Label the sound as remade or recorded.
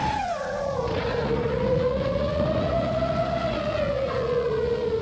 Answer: remade